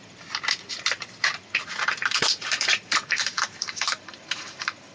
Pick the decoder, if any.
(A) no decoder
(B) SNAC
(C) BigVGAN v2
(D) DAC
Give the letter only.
C